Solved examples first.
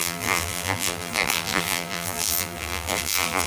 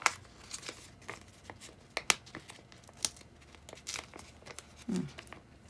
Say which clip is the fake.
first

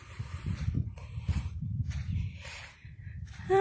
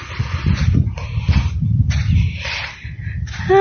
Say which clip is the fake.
first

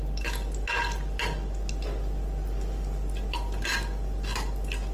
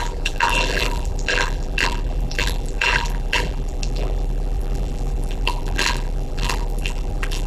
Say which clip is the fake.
second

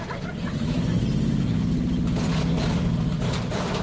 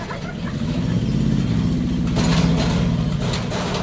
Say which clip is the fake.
first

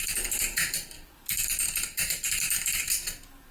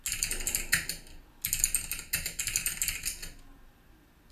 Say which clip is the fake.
first